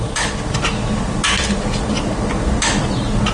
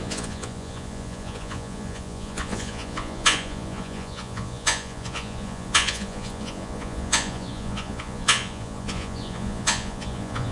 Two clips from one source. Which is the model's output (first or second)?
second